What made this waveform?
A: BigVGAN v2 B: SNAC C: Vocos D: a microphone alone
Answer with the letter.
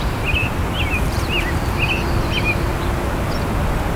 D